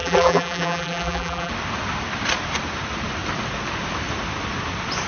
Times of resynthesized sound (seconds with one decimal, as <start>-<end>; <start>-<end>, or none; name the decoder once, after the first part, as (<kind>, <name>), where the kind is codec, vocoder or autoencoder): 0.0-1.5 (vocoder, BigVGAN v2)